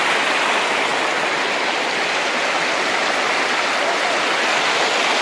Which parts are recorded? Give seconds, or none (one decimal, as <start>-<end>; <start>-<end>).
0.0-5.2